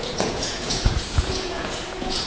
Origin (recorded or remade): remade